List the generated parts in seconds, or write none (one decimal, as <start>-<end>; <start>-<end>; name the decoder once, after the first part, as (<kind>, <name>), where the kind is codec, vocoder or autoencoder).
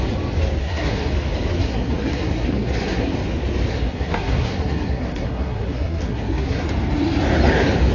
0.6-1.1 (codec, SNAC); 1.6-3.1; 3.7-6.7